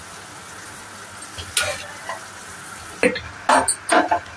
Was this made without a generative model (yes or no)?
yes